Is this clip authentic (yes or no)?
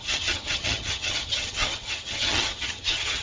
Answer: no